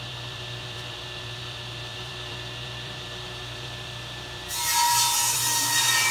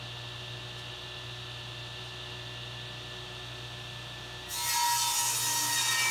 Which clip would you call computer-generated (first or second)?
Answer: first